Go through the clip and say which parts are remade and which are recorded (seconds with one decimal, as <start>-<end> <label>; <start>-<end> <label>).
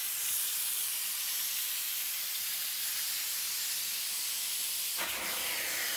0.0-6.0 remade